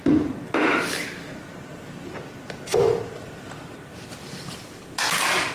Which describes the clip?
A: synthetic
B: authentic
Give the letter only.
B